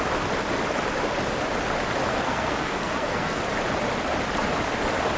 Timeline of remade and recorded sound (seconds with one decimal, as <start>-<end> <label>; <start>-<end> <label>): 0.0-2.1 recorded; 2.1-3.4 remade; 3.4-5.2 recorded